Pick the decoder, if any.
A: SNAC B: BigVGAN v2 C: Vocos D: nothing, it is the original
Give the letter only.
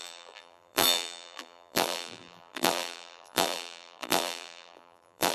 B